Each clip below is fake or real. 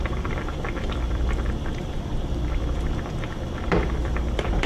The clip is fake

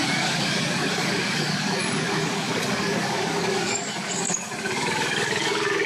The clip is fake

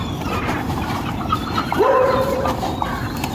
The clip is fake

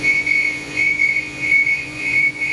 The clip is fake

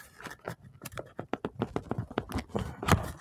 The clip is real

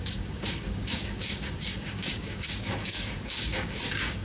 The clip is fake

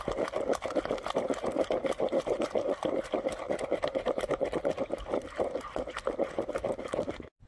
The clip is real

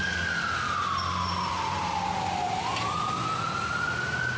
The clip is real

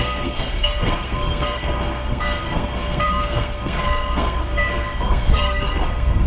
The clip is fake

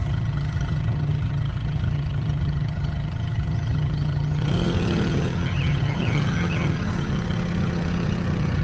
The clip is fake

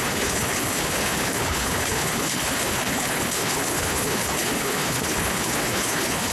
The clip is fake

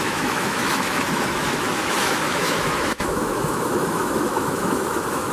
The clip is fake